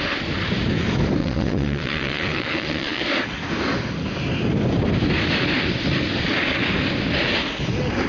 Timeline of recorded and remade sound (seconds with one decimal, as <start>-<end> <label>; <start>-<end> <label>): 0.0-1.2 recorded; 1.2-3.0 remade; 3.0-8.1 recorded